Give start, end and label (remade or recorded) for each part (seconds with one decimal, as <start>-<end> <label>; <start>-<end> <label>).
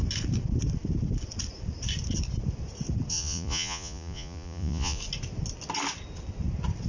0.0-3.1 recorded; 3.1-5.0 remade; 5.0-6.9 recorded